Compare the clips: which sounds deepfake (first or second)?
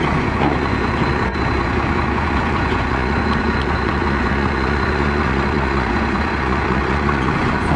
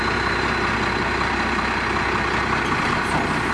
first